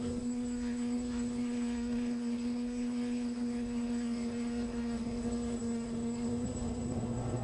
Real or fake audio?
fake